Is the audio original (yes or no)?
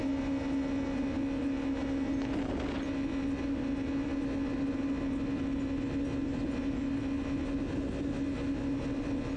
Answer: yes